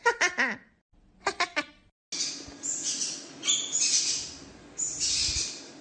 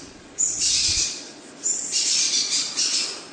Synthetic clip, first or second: second